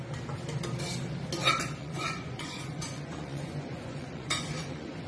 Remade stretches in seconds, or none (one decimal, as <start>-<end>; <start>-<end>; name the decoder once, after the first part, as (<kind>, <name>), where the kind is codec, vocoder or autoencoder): 1.8-5.1 (vocoder, Vocos)